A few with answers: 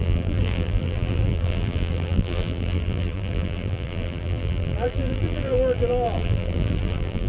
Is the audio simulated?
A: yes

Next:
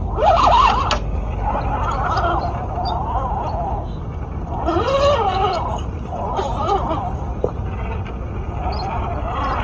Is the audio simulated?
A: no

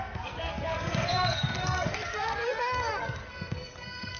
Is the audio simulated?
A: yes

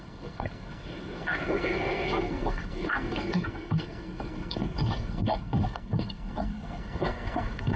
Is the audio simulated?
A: yes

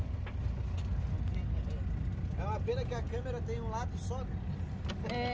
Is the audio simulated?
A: no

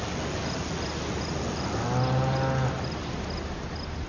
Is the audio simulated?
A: no